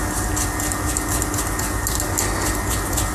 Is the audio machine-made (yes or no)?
no